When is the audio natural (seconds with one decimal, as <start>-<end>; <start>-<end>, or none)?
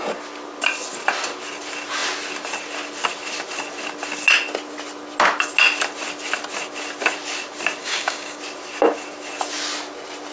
0.0-7.8; 8.4-10.3